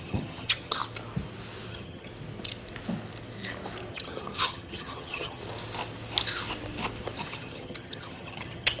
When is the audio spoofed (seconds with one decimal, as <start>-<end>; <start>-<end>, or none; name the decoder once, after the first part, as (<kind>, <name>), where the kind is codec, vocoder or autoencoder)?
0.0-0.8 (vocoder, HiFi-GAN); 1.7-2.1; 3.9-5.4; 7.2-8.8